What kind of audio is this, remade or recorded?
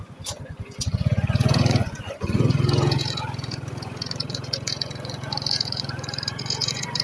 remade